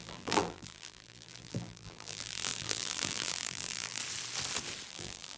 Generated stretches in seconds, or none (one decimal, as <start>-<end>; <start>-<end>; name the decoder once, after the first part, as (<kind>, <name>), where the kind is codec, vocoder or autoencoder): 0.0-4.0 (vocoder, BigVGAN v2); 4.9-5.4